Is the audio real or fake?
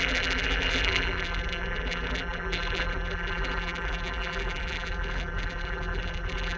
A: fake